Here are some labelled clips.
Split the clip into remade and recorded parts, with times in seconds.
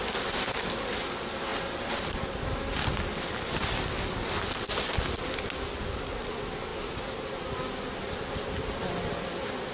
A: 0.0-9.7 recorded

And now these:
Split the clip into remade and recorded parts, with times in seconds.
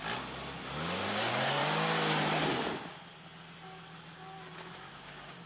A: 0.0-1.1 recorded; 1.1-1.6 remade; 1.6-4.9 recorded; 4.9-5.5 remade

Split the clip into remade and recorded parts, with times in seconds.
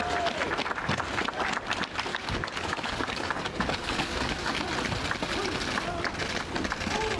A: 0.0-2.1 recorded; 2.1-4.6 remade; 4.6-7.2 recorded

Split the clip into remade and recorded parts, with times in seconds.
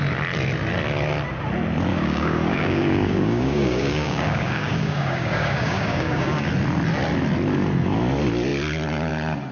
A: 0.0-1.9 recorded; 1.9-6.5 remade; 6.5-9.5 recorded